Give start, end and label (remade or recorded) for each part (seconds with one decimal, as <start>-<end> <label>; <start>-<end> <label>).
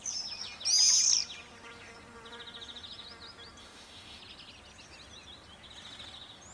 0.0-3.6 recorded; 3.6-4.2 remade; 4.2-6.5 recorded